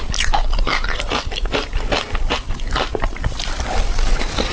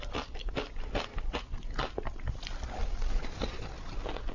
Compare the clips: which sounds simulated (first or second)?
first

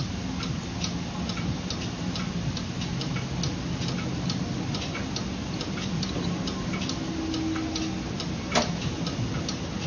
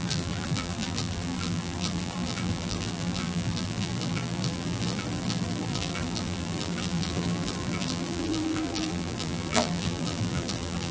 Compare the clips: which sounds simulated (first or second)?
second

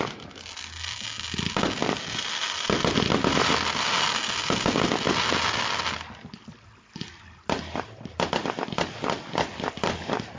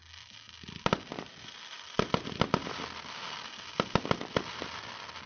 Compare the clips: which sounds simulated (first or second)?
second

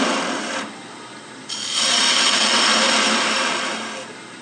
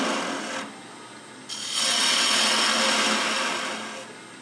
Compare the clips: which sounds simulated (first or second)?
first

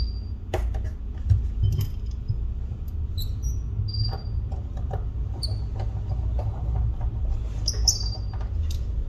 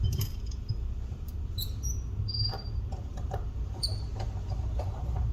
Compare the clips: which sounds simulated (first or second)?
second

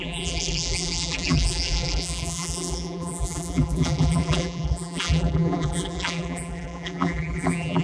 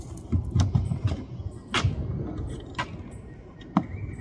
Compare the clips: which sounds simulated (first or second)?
first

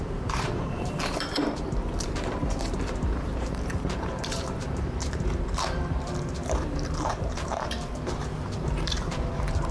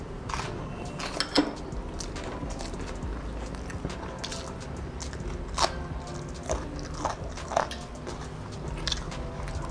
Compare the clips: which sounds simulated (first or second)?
first